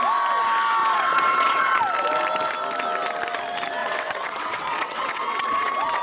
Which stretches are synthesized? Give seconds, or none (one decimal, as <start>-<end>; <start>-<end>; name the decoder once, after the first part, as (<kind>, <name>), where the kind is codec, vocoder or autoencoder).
0.8-1.8 (vocoder, WaveNeXt); 3.8-6.0